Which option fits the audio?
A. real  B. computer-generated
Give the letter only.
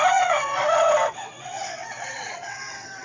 B